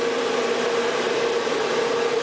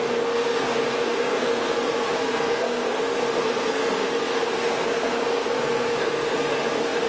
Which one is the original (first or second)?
first